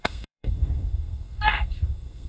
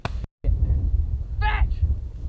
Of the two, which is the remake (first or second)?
first